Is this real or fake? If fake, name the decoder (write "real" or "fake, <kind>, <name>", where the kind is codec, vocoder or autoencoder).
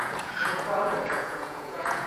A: fake, vocoder, Vocos